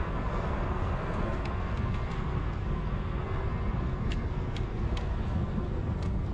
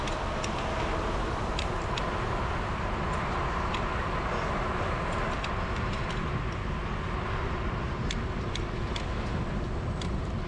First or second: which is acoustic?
second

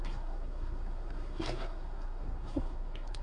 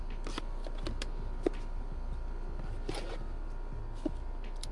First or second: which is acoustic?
second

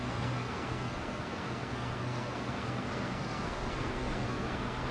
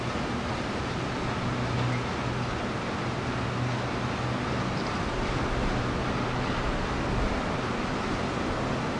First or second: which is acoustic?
second